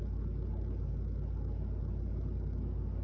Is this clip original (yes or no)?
yes